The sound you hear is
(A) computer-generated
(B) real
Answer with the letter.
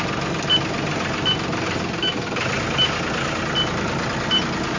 B